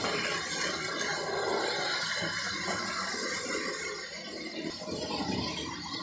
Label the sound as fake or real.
real